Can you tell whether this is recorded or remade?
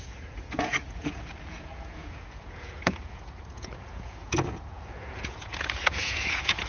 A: remade